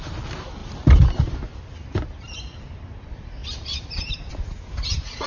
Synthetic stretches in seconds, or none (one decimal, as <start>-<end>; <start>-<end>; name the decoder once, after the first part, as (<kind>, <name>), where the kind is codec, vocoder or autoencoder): none